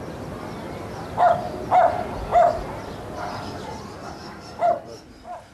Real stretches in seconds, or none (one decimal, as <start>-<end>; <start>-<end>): 0.0-5.5